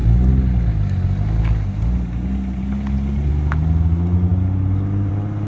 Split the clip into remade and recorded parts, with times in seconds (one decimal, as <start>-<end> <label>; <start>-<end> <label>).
0.0-5.5 recorded